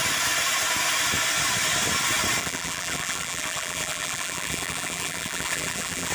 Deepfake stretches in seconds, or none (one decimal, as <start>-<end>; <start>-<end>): 2.4-6.1